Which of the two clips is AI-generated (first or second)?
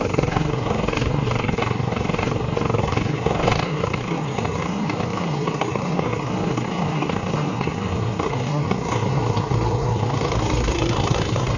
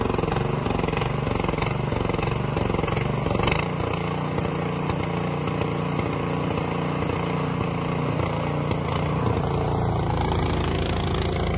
first